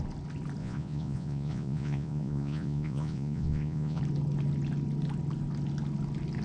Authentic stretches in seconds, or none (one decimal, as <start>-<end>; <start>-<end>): 0.0-0.6; 4.0-6.4